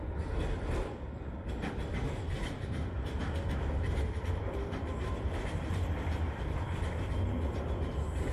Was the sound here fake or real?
real